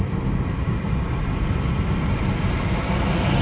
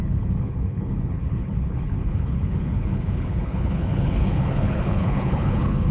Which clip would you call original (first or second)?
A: first